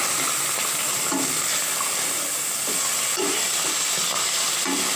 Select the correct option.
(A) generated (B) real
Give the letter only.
B